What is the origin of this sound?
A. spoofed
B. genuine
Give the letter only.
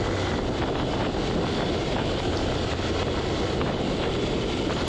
B